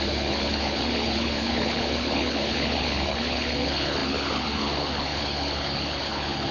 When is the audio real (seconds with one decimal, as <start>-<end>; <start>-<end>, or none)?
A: none

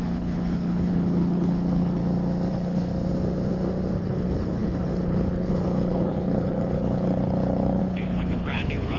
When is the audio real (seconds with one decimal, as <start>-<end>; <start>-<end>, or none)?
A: 2.0-2.5; 2.9-4.0

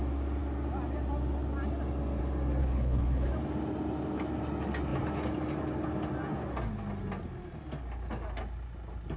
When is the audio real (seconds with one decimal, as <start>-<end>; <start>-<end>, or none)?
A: 0.0-2.6; 3.3-9.2

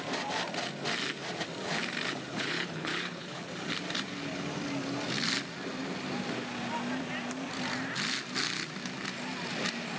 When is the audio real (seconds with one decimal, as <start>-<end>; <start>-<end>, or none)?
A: 0.0-2.3; 3.5-10.0

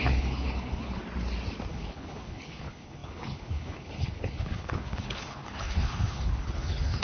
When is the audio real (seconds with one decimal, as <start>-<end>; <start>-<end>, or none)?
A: 1.0-1.7

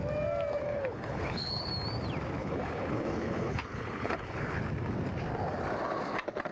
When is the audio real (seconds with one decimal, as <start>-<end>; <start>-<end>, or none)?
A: 0.0-0.6; 1.7-2.4; 4.6-6.5